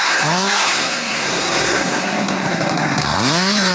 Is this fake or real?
fake